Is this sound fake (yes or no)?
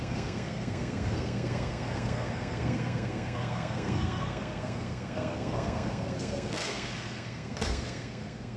yes